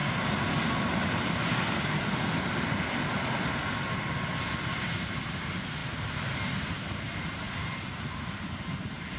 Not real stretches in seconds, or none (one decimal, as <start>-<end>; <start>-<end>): 5.8-7.5